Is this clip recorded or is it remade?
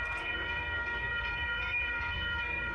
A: remade